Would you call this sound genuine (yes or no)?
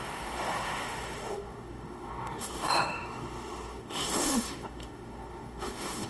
no